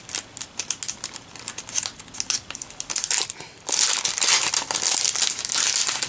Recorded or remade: recorded